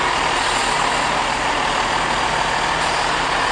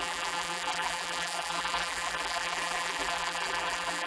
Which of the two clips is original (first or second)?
first